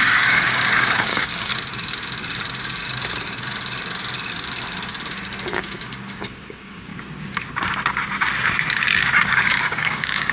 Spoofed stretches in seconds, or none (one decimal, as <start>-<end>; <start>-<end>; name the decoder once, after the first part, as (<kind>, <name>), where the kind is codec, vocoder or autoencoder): 0.0-1.5 (codec, DAC); 5.5-6.9; 9.3-10.3